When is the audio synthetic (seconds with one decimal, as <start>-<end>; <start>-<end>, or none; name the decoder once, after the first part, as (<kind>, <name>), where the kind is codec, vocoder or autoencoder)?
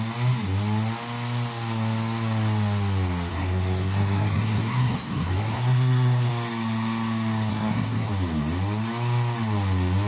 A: 3.3-6.3 (codec, SNAC); 7.5-8.1